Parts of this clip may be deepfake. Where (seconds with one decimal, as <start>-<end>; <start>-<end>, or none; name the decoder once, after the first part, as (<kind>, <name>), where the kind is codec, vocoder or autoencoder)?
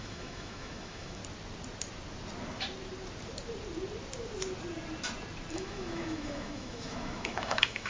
0.0-1.2 (autoencoder, DAC-VAE); 5.5-7.9